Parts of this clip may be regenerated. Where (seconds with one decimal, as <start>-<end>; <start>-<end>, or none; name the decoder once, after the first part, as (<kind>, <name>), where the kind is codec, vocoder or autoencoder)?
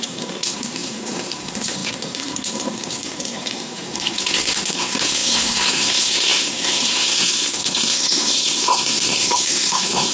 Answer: 0.0-10.1 (codec, SNAC)